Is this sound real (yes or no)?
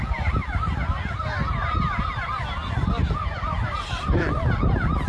yes